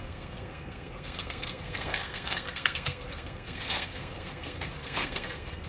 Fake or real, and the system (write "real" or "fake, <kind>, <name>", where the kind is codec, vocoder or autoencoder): fake, codec, SNAC